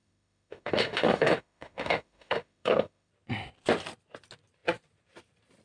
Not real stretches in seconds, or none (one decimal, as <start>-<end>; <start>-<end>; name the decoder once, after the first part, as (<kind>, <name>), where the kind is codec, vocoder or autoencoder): 0.0-3.1 (autoencoder, DAC-VAE)